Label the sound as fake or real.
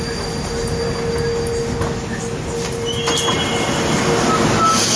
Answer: real